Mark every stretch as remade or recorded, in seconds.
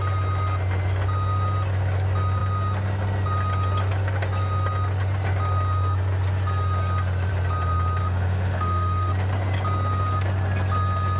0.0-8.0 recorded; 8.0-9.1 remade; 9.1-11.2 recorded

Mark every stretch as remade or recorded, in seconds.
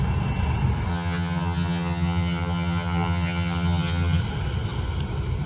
0.0-0.9 recorded; 0.9-4.2 remade; 4.2-5.5 recorded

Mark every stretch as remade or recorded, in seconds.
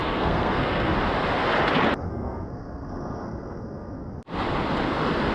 0.0-0.9 remade; 0.9-2.1 recorded; 2.1-4.1 remade; 4.1-5.3 recorded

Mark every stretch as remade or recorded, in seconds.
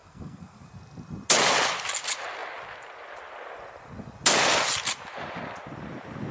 0.0-0.7 remade; 0.7-6.3 recorded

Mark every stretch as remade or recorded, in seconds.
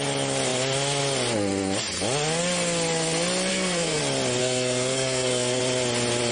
0.0-3.5 recorded; 3.5-4.0 remade; 4.0-4.4 recorded; 4.4-5.6 remade; 5.6-6.3 recorded